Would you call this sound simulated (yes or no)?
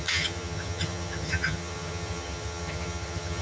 yes